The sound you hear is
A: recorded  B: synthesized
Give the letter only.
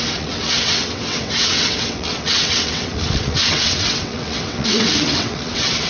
B